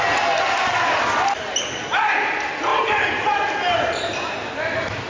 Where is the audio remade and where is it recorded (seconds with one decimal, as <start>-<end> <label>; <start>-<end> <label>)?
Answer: 0.0-2.7 recorded; 2.7-4.1 remade; 4.1-5.1 recorded